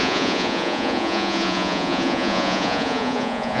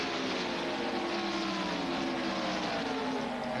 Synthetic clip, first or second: first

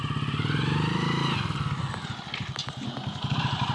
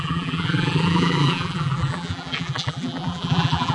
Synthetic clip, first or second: second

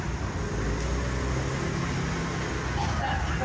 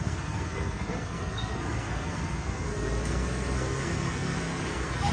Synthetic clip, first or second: second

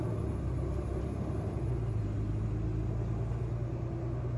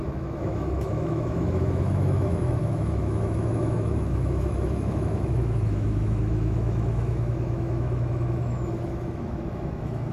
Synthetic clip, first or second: second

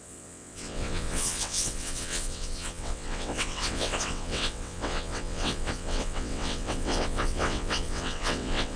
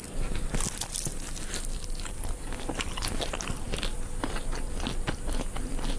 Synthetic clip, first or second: first